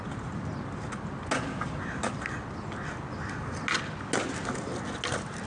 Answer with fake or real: real